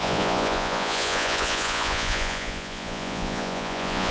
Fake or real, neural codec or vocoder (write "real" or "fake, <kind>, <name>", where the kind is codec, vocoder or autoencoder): fake, vocoder, Vocos